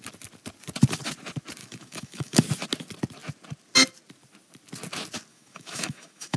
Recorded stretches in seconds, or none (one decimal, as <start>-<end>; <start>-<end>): 0.0-1.6; 2.4-5.3